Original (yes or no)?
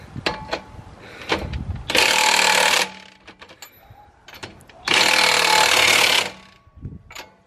yes